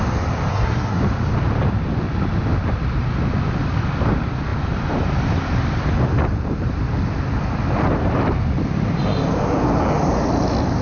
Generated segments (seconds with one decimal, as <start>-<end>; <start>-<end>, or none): 0.5-1.0